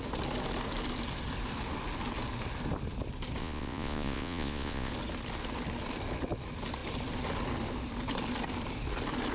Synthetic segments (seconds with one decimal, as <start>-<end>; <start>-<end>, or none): 3.4-4.9